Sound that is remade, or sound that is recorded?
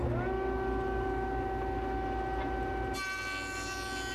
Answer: recorded